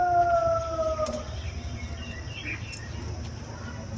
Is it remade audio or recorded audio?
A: recorded